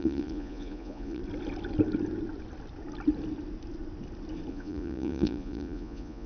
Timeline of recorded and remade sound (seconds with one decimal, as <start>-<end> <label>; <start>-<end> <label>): 0.0-1.2 remade; 1.2-4.5 recorded; 4.5-6.3 remade